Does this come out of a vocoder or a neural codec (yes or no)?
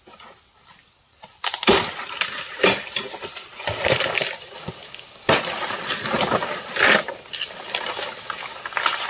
no